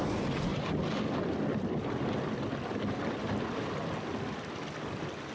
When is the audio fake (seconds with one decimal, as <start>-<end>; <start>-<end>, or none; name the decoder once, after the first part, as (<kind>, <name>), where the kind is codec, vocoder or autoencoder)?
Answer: none